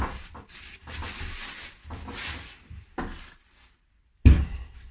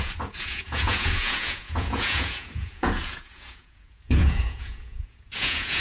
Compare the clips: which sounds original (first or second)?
first